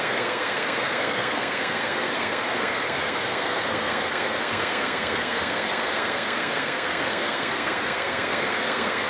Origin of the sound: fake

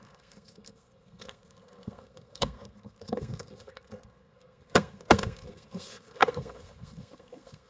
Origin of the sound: fake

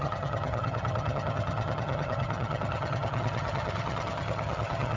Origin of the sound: fake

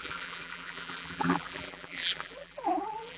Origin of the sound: fake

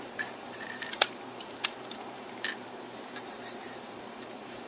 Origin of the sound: fake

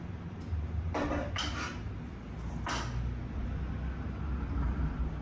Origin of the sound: real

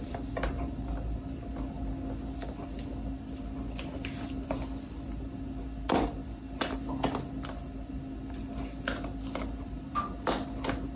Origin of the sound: real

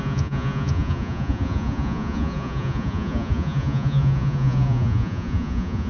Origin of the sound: fake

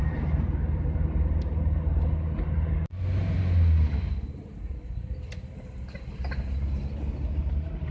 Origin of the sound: real